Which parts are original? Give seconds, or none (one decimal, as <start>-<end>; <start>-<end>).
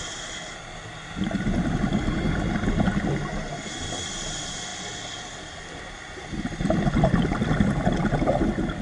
0.0-8.8